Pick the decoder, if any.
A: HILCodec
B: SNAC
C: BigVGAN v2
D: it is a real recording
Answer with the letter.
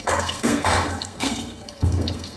B